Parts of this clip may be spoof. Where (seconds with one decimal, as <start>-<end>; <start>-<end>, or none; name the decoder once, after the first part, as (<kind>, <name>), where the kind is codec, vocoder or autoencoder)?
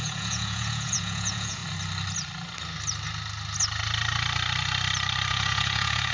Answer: 0.0-1.6 (vocoder, Vocos); 5.3-6.1